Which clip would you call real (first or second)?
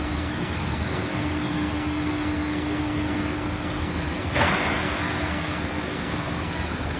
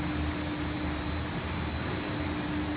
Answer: second